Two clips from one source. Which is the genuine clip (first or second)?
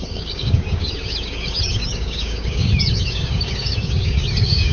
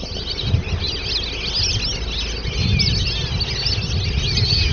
second